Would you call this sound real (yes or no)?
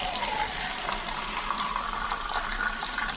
no